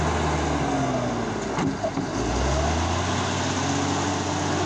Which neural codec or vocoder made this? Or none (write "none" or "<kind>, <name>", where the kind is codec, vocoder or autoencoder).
none